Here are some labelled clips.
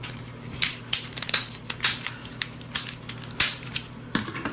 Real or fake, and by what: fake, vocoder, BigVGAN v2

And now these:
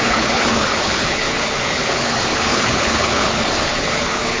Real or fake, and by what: fake, codec, HILCodec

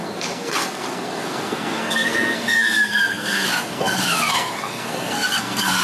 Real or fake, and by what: fake, codec, SNAC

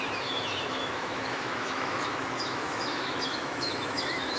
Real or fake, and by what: fake, autoencoder, DAC-VAE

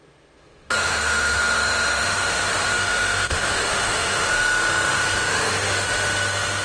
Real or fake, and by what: fake, autoencoder, DAC-VAE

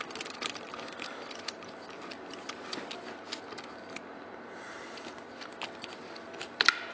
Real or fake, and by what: real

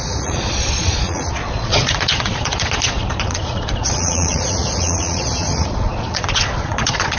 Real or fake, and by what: fake, vocoder, Vocos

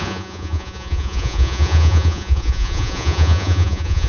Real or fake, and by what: fake, vocoder, Vocos